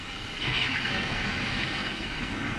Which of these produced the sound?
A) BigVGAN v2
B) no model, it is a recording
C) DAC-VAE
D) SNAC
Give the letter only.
D